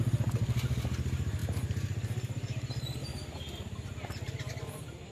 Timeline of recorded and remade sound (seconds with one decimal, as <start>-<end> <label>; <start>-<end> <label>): 0.0-5.1 recorded

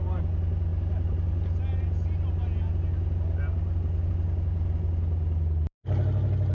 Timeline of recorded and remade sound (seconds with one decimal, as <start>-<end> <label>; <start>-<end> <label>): 0.0-6.5 recorded

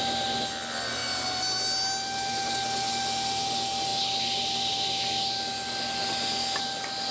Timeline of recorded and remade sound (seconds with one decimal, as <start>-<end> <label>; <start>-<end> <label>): 0.0-7.1 recorded

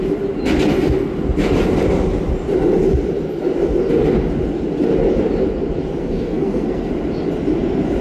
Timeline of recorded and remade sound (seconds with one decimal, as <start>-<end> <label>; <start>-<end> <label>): 0.0-6.0 recorded; 6.0-6.9 remade; 6.9-8.0 recorded

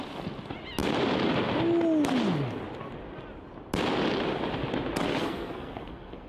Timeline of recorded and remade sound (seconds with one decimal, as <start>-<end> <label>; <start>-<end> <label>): 0.0-5.1 recorded; 5.1-6.3 remade